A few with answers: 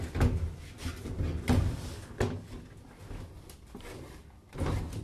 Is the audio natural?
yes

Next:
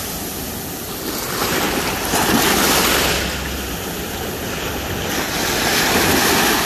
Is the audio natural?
yes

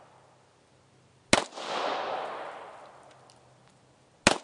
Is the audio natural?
yes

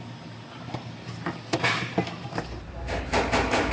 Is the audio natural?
yes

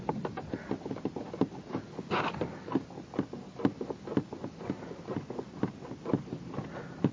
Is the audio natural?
yes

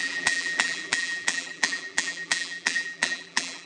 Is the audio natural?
no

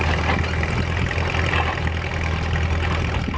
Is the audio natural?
yes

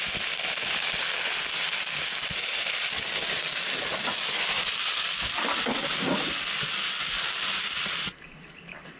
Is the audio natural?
yes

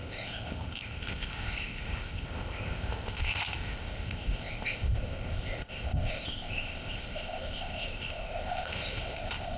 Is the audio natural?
no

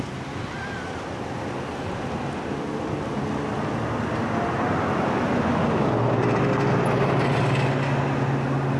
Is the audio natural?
yes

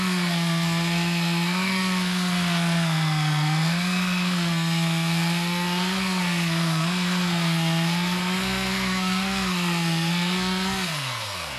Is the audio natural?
no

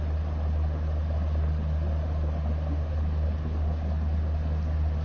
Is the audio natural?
yes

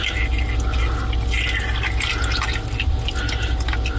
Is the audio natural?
yes